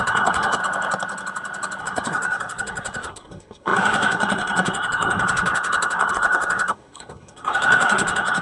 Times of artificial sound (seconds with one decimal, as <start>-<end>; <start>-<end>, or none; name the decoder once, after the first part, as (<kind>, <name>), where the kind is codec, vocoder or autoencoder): 0.0-0.6 (codec, SNAC); 1.8-8.4